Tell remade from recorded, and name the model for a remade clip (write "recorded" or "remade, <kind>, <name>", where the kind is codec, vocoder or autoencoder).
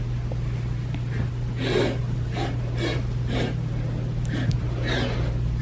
recorded